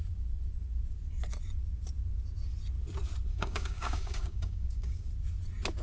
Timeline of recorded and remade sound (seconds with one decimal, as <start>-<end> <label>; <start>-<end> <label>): 0.0-3.3 recorded; 3.3-5.1 remade; 5.1-5.8 recorded